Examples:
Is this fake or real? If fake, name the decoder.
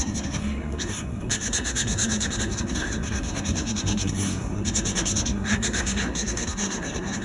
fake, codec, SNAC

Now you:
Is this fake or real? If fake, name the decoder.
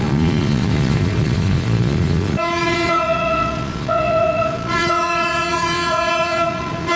fake, vocoder, Vocos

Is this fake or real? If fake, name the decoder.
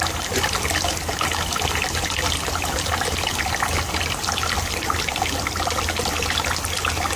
real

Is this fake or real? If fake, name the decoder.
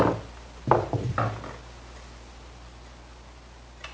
real